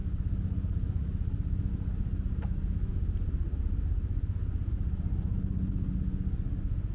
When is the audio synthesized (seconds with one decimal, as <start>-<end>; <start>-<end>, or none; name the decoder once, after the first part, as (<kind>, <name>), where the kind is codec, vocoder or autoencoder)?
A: none